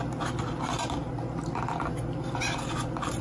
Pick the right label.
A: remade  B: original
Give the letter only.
B